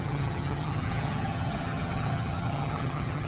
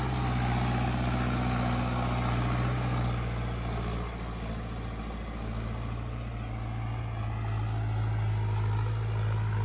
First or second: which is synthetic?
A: first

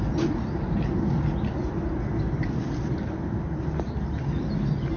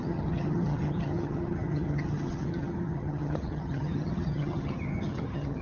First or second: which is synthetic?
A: second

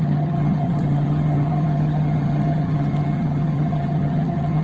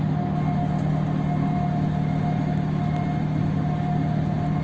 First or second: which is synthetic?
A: first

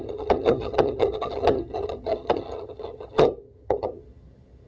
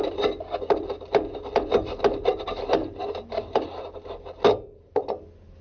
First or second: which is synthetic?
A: first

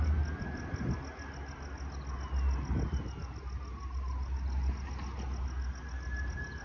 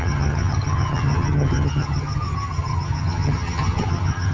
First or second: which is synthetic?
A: second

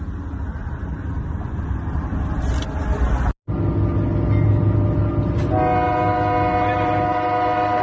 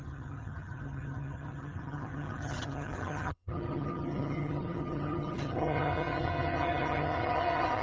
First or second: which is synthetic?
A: second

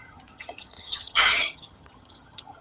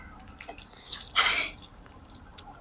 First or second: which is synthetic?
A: first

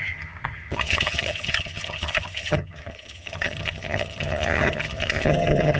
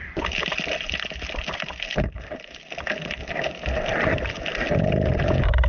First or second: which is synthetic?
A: first